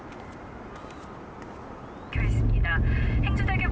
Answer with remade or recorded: recorded